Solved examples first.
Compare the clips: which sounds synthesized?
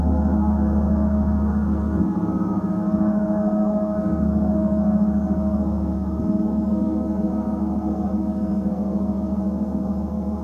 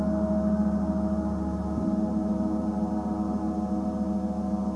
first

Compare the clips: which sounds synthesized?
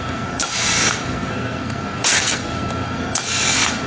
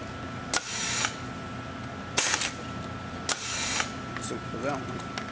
first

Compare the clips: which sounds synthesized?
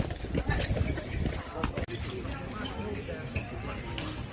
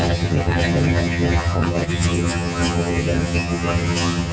second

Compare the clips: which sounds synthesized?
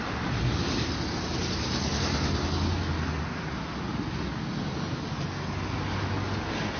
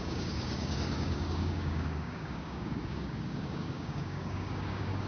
second